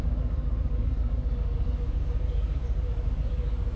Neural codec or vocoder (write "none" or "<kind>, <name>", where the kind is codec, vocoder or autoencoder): codec, DAC